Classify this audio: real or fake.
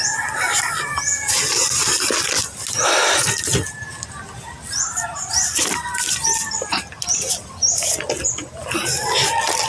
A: real